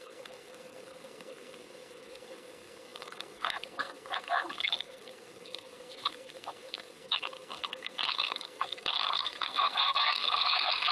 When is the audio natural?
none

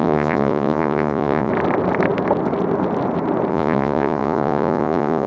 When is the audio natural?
1.5-3.5

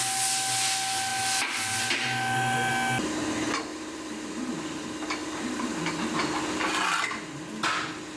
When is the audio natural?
0.0-3.7; 4.5-5.2; 5.8-8.2

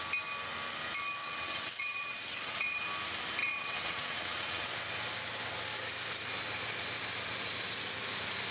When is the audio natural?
0.0-1.2; 2.8-3.4; 4.7-8.5

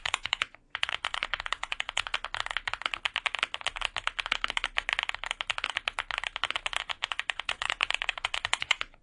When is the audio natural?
2.1-6.8

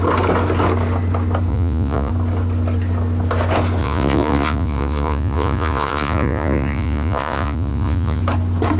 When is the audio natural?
0.0-1.5; 2.1-3.8; 8.2-8.8